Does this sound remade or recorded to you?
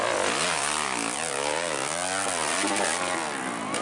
recorded